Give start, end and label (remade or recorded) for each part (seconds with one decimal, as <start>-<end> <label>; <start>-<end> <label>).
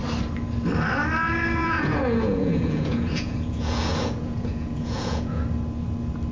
0.0-1.6 recorded; 1.6-5.4 remade; 5.4-6.3 recorded